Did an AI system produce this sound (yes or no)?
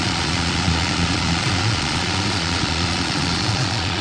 yes